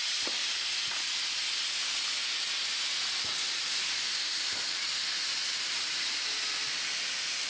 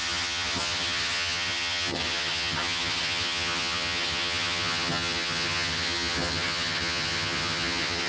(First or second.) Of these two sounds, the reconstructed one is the second